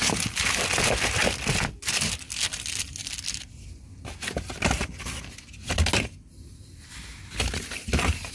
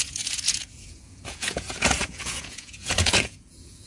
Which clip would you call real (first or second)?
first